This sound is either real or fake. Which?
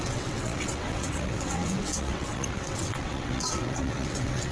fake